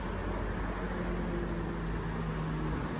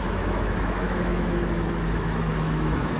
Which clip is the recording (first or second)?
first